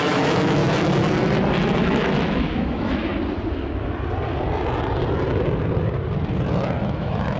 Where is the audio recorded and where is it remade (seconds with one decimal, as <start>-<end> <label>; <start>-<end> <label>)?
0.0-0.6 remade; 0.6-1.8 recorded; 1.8-3.1 remade; 3.1-6.8 recorded; 6.8-7.4 remade